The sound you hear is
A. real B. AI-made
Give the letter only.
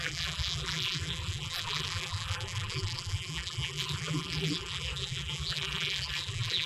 B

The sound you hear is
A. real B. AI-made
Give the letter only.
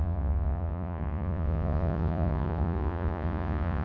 B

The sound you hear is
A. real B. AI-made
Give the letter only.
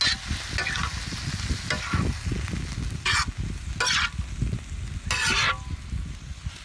A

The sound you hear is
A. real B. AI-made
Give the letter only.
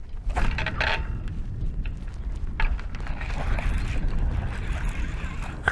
A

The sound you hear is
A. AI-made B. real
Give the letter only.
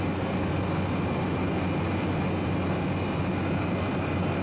B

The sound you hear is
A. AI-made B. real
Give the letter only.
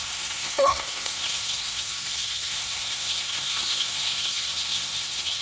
A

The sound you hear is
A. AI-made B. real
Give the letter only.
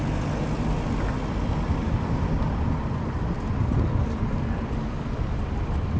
B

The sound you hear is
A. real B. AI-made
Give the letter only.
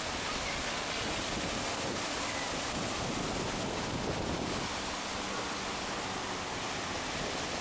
A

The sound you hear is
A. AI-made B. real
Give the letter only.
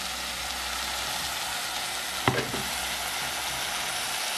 B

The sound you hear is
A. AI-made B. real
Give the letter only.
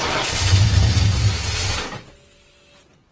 B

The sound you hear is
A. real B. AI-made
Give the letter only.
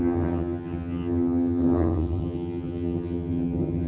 B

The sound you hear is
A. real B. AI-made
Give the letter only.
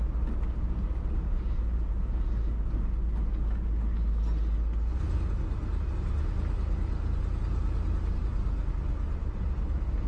A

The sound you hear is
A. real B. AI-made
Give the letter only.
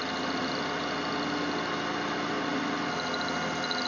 A